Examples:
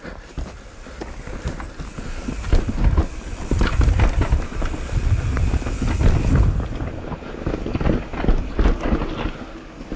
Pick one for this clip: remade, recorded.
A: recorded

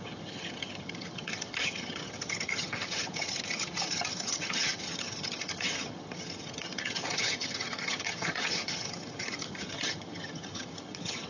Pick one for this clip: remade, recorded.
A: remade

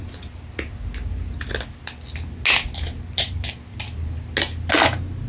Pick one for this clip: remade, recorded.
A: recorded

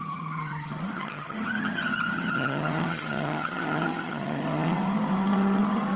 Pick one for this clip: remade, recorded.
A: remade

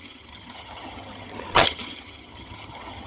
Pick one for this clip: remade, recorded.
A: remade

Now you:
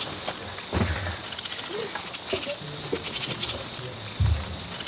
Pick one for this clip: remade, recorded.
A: recorded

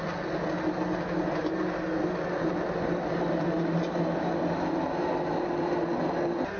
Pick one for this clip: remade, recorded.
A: recorded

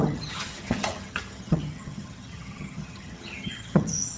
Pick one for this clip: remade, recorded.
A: remade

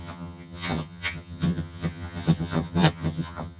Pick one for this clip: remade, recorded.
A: remade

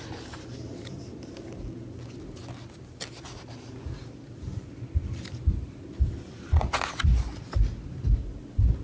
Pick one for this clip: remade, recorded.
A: recorded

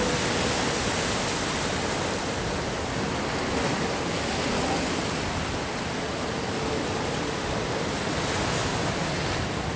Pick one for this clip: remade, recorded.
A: recorded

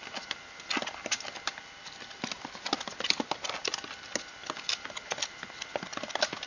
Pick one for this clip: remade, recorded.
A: recorded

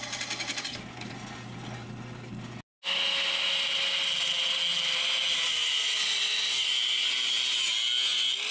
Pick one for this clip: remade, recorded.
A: recorded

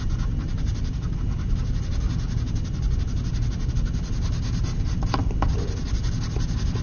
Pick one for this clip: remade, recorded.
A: recorded